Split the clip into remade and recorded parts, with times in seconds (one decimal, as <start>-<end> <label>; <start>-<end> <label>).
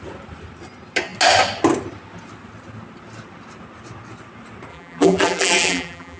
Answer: 0.0-4.7 recorded; 4.7-6.2 remade